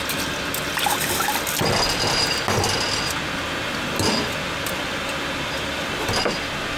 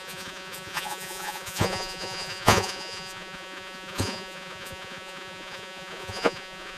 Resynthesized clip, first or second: second